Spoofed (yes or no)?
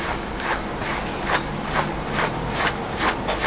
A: no